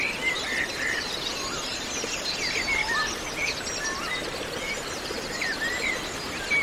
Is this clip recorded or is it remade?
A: recorded